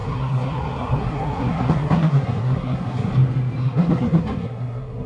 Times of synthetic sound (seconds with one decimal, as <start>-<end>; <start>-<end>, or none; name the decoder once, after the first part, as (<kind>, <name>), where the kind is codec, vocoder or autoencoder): 0.0-3.1 (codec, SNAC); 3.6-5.1